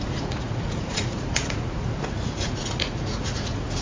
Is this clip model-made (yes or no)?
yes